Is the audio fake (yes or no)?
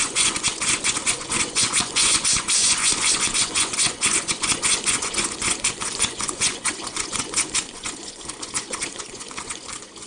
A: yes